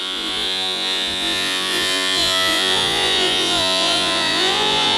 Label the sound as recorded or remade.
remade